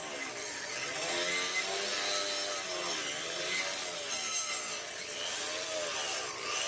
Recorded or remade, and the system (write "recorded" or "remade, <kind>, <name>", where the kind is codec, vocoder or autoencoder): recorded